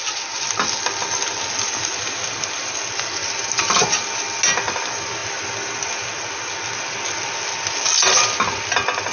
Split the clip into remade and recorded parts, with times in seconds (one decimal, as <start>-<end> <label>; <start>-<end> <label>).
0.0-9.1 recorded